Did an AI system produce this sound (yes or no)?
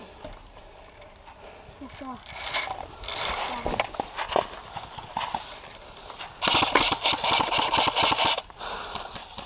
no